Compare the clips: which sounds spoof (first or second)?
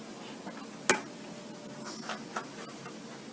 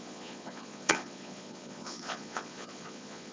second